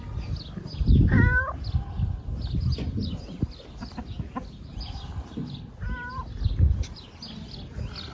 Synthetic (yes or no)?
no